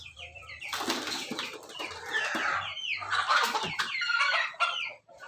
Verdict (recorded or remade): remade